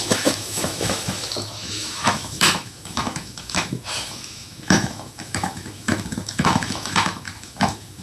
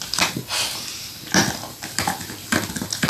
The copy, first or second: first